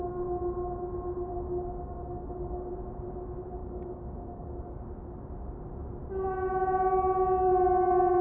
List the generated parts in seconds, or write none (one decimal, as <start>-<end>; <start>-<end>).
1.3-2.7; 3.6-4.8